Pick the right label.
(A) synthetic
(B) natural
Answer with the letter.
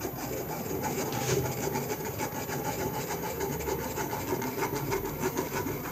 B